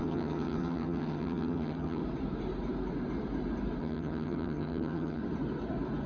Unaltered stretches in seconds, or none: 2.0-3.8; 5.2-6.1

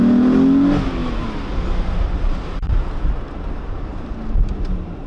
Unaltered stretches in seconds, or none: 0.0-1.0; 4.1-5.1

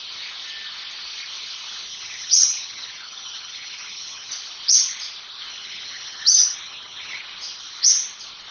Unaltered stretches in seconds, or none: 0.0-1.9; 4.3-5.5; 7.2-8.5

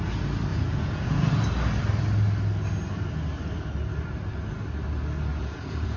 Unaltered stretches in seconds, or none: 0.0-0.5; 1.3-5.3

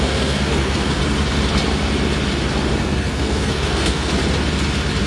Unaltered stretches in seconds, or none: 1.0-2.8; 4.1-5.1

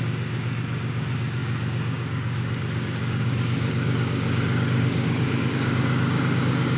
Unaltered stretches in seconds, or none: none

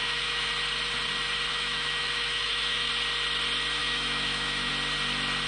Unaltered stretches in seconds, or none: 0.5-1.5; 2.9-3.8; 4.7-5.5

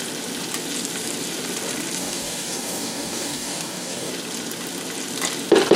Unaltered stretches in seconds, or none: 0.0-2.0; 4.1-5.8